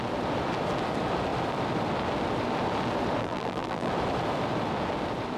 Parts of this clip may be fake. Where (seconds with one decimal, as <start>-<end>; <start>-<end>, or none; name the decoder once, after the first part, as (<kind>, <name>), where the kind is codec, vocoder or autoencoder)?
3.2-3.9 (vocoder, BigVGAN v2)